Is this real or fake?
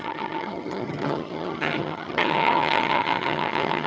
fake